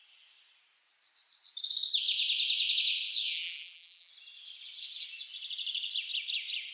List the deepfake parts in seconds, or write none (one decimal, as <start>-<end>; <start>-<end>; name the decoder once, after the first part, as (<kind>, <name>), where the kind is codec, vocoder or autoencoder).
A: 3.3-4.1 (vocoder, BigVGAN v2)